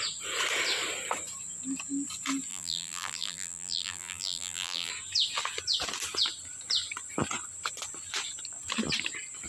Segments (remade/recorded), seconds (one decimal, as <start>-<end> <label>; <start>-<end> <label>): 0.0-2.5 recorded; 2.5-4.9 remade; 4.9-9.5 recorded